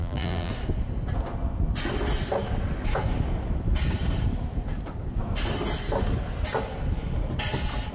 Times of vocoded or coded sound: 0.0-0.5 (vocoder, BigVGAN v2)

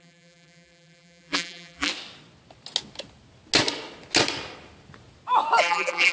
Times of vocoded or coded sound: 0.0-1.9 (vocoder, BigVGAN v2); 5.6-6.1

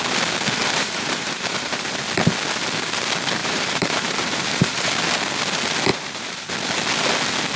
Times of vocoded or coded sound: 0.6-2.0 (vocoder, BigVGAN v2); 3.4-5.0; 5.9-6.5

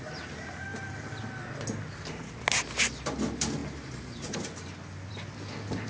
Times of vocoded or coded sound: none

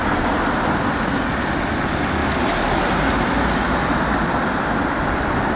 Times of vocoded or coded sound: 2.2-3.9 (vocoder, BigVGAN v2)

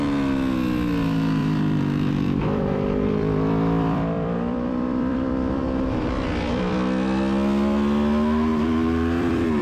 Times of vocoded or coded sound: 1.4-5.6 (vocoder, BigVGAN v2); 8.5-9.6

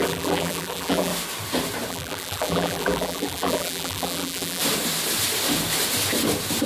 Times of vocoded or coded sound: 0.0-1.1 (vocoder, BigVGAN v2); 1.9-4.6